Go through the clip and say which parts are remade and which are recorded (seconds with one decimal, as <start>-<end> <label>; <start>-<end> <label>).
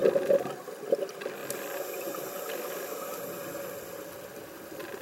0.0-0.8 remade; 0.8-1.4 recorded; 1.4-4.4 remade; 4.4-5.0 recorded